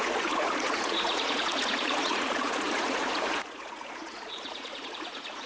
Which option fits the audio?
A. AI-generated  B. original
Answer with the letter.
A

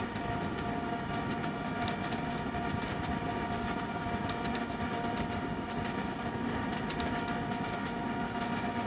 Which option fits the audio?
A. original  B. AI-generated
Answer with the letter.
A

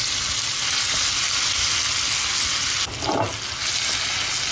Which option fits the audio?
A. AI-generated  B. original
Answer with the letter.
B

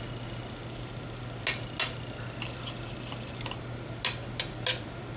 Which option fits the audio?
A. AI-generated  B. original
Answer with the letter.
B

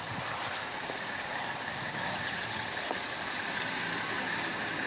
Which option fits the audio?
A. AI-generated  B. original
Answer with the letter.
B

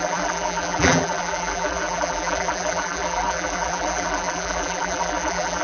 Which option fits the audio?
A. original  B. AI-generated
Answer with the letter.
B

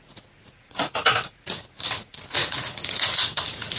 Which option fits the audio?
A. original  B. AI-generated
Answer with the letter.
B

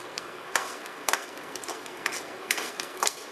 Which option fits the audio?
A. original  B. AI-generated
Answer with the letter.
B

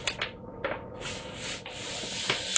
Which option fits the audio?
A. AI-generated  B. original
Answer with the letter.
B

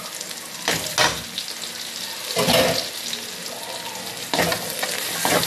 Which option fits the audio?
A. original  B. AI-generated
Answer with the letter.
A